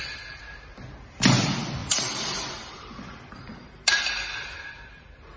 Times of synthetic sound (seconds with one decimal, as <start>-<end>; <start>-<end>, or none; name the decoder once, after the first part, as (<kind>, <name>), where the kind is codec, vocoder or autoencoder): 1.8-5.0 (vocoder, BigVGAN v2)